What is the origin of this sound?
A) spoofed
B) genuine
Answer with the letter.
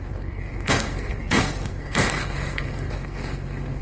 A